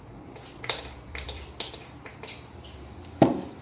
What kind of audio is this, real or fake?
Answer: fake